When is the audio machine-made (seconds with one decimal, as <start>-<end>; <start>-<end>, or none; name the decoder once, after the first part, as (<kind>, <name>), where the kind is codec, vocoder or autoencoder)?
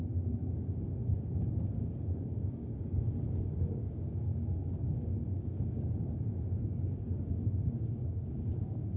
0.0-9.0 (codec, DAC)